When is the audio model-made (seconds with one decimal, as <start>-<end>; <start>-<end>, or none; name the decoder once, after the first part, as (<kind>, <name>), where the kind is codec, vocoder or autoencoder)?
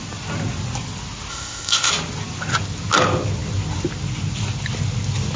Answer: 1.3-1.9 (codec, ZipCodec)